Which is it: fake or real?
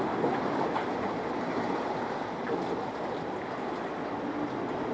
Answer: real